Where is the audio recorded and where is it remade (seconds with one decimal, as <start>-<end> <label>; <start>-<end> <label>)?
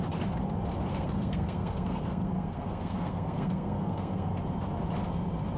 0.0-0.9 recorded; 0.9-4.3 remade; 4.3-5.6 recorded